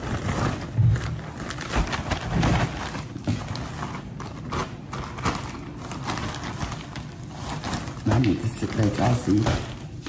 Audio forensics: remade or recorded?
recorded